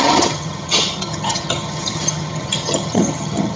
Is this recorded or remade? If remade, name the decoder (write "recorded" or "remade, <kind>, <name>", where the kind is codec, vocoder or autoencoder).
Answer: remade, vocoder, HiFi-GAN